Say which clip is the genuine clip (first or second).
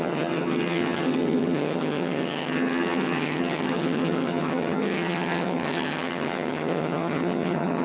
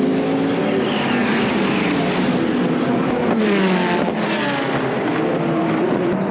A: second